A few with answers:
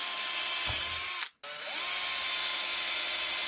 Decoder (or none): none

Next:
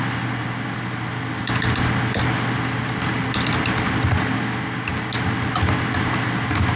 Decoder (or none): none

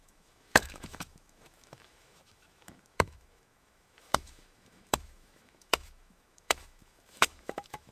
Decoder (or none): autoencoder, DAC-VAE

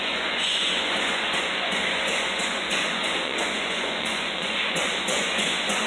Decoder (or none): vocoder, Vocos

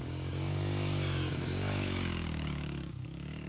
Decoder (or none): codec, DAC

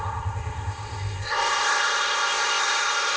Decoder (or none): codec, ZipCodec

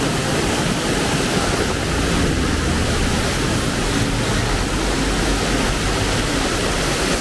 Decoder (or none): none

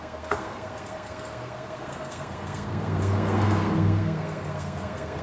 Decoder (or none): codec, SNAC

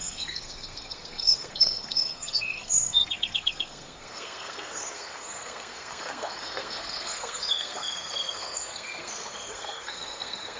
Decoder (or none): codec, SNAC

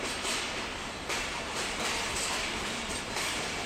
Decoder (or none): vocoder, BigVGAN v2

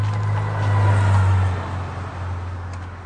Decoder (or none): none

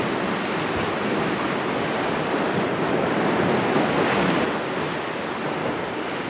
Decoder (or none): none